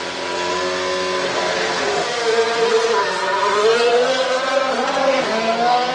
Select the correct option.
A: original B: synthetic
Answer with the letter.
A